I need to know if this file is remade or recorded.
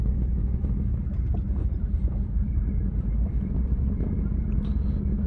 recorded